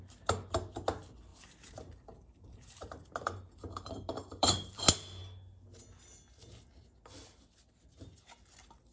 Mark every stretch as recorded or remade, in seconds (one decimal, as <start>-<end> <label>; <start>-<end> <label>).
0.0-1.3 recorded; 1.3-4.8 remade; 4.8-8.9 recorded